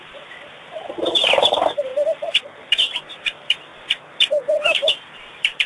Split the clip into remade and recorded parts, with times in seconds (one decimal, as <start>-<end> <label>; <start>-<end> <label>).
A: 0.0-1.9 remade; 1.9-2.7 recorded; 2.7-5.7 remade